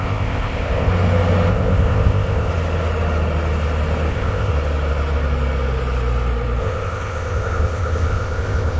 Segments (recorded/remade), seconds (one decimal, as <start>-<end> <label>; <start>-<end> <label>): 0.0-0.9 remade; 0.9-1.5 recorded; 1.5-2.5 remade; 2.5-4.1 recorded; 4.1-4.5 remade; 4.5-6.6 recorded; 6.6-8.8 remade